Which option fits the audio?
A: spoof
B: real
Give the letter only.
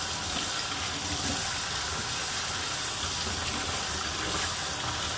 B